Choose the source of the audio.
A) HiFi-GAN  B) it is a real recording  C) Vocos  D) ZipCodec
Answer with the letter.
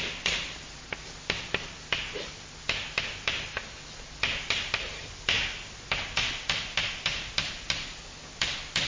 B